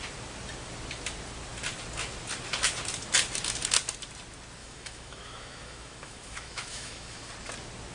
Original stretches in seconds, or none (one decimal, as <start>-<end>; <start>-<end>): 0.0-4.6; 7.3-7.9